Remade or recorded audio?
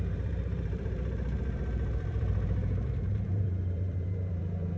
remade